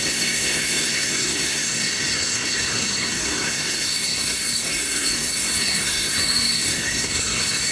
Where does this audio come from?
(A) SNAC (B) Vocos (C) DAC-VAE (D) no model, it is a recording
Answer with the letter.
A